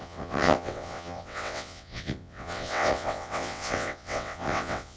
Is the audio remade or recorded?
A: remade